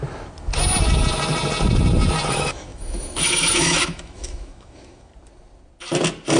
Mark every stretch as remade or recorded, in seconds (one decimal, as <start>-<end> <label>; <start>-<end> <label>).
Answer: 0.0-2.3 recorded; 2.3-5.1 remade; 5.1-6.4 recorded

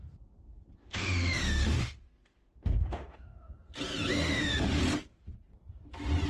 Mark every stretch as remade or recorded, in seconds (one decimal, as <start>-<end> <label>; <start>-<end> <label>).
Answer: 0.0-0.8 recorded; 0.8-3.5 remade; 3.5-4.1 recorded; 4.1-4.8 remade; 4.8-6.3 recorded

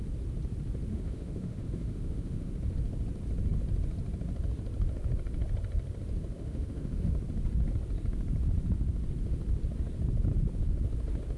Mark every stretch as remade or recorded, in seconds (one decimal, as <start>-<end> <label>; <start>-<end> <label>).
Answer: 0.0-0.9 recorded; 0.9-2.5 remade; 2.5-6.4 recorded; 6.4-7.1 remade; 7.1-11.4 recorded

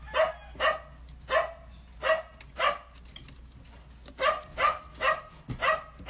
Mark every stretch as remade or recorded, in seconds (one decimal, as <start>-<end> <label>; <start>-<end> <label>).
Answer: 0.0-6.1 recorded